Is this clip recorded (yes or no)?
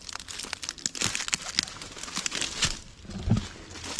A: yes